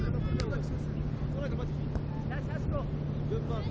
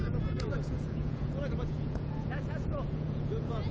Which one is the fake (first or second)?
second